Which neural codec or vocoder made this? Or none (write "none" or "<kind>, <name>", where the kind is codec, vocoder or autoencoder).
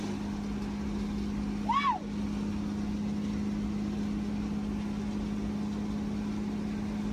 none